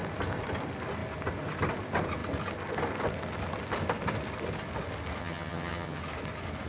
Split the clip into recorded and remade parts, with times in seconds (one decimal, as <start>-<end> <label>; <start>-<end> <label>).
0.0-5.2 recorded; 5.2-6.0 remade; 6.0-6.7 recorded